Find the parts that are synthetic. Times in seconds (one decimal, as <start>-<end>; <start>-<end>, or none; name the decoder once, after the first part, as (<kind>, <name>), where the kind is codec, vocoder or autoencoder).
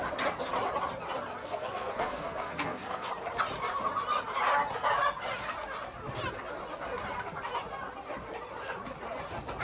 1.4-3.1 (codec, SNAC)